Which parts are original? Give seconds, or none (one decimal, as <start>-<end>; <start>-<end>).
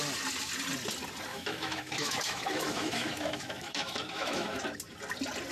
0.0-1.3; 4.6-5.5